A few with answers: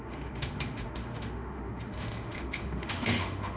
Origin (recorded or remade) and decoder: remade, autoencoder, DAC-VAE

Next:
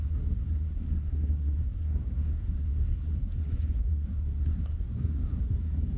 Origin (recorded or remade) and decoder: remade, codec, SNAC